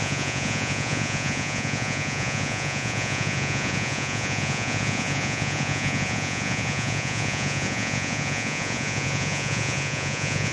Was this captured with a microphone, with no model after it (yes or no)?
no